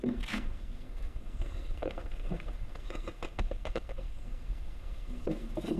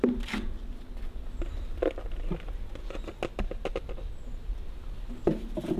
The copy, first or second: first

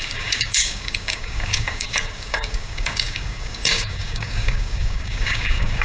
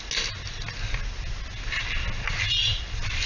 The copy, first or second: first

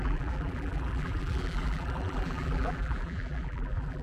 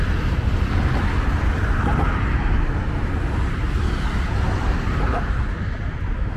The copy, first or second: first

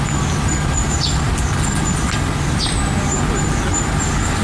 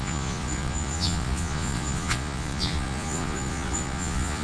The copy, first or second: second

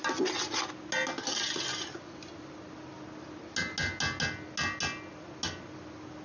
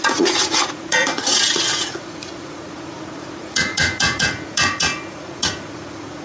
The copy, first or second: second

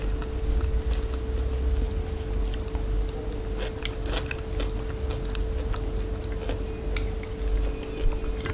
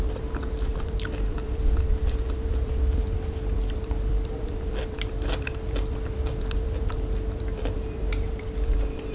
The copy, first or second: second